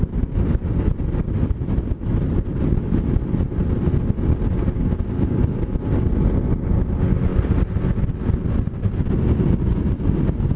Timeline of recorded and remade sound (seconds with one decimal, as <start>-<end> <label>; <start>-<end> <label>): 0.0-7.3 recorded; 7.3-9.9 remade; 9.9-10.6 recorded